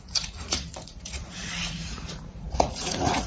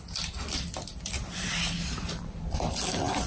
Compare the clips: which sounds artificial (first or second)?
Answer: first